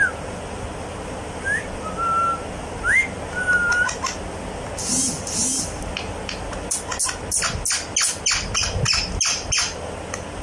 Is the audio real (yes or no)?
yes